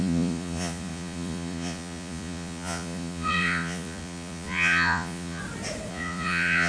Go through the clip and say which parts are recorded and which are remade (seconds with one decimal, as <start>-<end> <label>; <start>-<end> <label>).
0.0-5.4 remade; 5.4-5.9 recorded; 5.9-6.7 remade